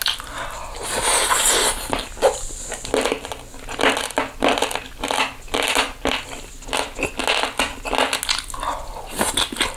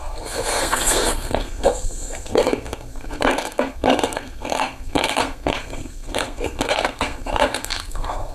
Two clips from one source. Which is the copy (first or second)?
second